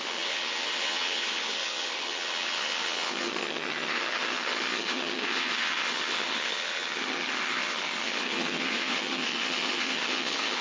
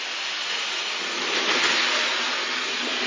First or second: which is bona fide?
second